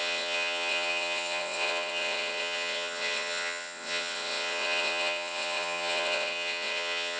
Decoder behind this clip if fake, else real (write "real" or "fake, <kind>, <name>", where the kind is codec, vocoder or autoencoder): fake, vocoder, WaveNeXt